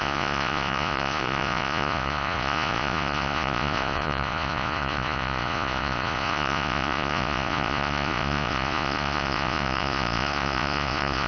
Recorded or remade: remade